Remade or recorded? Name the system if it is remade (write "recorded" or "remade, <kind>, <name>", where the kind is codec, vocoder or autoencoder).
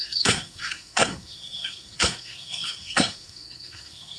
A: remade, codec, SNAC